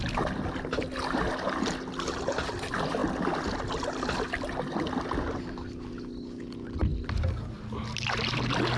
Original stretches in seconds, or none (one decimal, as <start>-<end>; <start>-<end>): 0.0-8.8